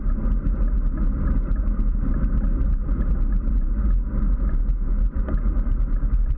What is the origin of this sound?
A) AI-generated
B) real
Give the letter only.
B